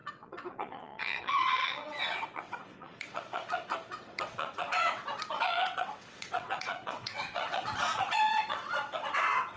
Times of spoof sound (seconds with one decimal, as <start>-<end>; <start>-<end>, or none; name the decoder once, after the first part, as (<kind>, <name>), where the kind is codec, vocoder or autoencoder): 0.0-9.6 (vocoder, WaveNeXt)